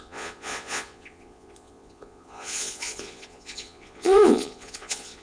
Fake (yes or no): yes